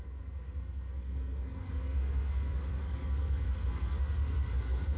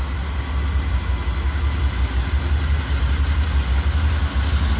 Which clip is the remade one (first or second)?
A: first